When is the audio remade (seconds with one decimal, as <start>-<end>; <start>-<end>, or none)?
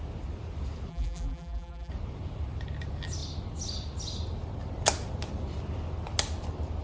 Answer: 0.9-1.9